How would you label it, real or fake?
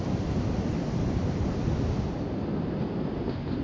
real